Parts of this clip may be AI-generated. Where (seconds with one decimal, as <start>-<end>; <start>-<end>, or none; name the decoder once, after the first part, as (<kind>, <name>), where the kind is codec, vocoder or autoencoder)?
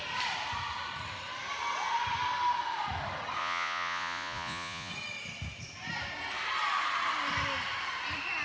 3.4-4.9 (vocoder, Vocos)